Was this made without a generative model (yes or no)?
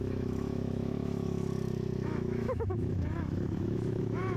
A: no